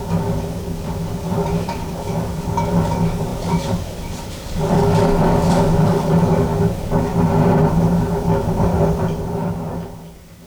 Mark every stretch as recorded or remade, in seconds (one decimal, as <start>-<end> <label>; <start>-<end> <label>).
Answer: 0.0-7.1 remade; 7.1-7.7 recorded; 7.7-8.7 remade; 8.7-9.3 recorded; 9.3-10.5 remade